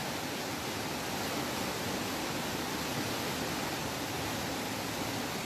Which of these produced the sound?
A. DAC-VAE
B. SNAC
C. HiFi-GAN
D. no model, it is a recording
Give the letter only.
D